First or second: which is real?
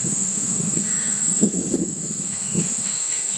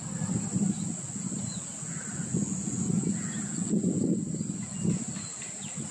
second